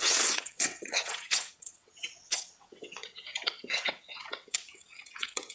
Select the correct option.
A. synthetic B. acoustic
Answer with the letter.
A